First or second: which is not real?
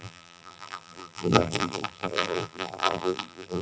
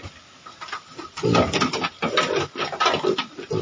first